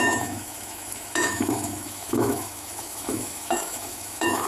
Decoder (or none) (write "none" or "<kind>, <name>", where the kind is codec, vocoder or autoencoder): autoencoder, DAC-VAE